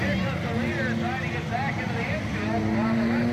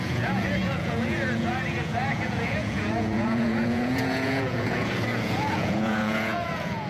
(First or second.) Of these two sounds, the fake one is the second